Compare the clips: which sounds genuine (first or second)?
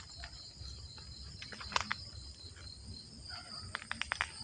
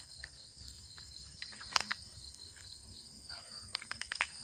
first